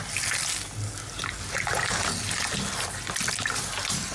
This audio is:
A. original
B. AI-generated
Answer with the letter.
A